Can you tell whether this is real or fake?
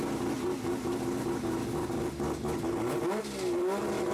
real